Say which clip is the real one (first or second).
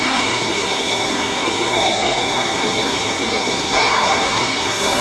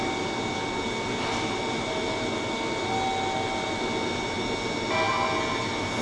second